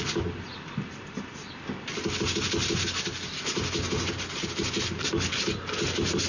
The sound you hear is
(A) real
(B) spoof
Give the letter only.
A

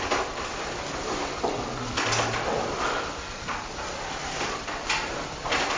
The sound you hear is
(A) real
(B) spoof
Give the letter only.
A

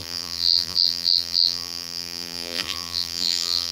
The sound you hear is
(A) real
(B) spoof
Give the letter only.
B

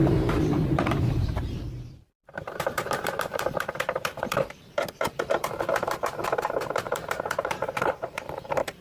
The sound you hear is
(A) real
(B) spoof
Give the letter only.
B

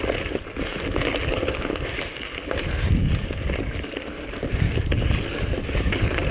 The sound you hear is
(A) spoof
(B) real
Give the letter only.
B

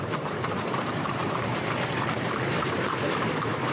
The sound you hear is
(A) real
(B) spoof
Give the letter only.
B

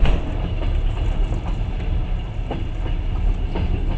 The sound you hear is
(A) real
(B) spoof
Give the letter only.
A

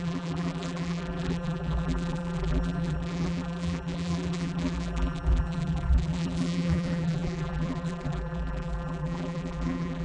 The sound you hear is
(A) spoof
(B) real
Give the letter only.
A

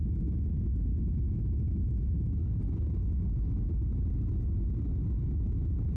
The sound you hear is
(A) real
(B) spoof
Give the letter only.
A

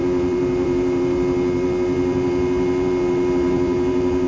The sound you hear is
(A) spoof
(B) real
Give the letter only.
A